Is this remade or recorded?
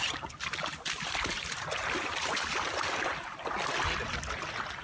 recorded